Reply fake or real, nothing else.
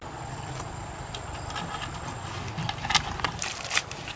real